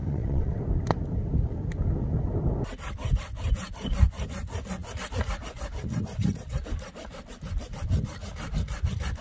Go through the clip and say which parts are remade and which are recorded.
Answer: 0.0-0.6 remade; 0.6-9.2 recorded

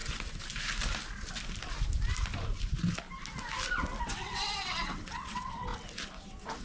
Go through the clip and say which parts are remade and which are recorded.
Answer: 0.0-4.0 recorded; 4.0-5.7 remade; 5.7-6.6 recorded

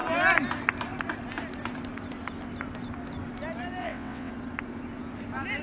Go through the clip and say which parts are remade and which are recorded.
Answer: 0.0-3.8 recorded; 3.8-4.3 remade; 4.3-5.6 recorded

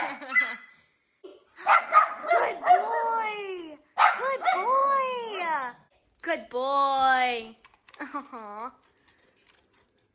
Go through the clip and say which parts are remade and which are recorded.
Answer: 0.0-10.1 recorded

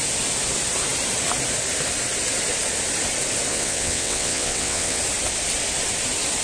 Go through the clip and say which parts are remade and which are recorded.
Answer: 0.0-3.5 recorded; 3.5-5.0 remade; 5.0-6.4 recorded